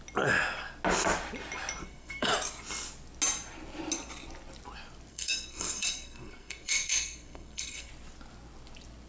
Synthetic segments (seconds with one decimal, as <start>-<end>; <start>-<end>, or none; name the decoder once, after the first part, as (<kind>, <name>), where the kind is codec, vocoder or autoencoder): 1.8-2.3 (codec, SNAC); 5.1-7.9